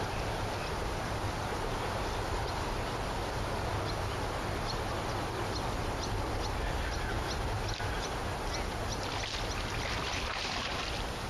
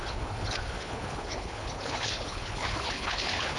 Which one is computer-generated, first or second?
second